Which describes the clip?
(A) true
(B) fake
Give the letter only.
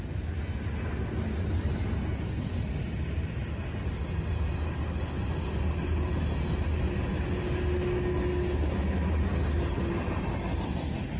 A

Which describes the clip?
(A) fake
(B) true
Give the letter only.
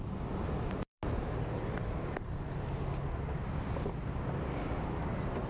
B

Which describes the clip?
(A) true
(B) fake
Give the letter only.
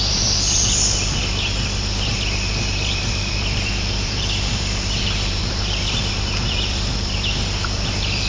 B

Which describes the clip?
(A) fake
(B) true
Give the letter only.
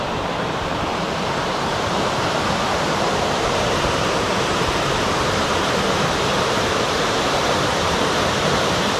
A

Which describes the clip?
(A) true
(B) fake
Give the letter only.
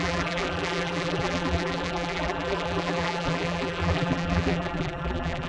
B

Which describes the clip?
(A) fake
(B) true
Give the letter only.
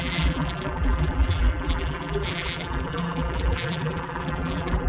A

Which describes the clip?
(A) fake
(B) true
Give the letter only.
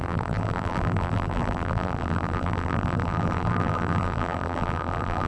A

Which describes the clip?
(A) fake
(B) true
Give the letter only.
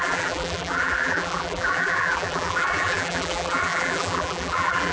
A